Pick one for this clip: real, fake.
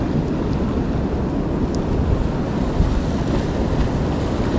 real